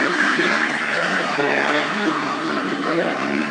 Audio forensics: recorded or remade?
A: remade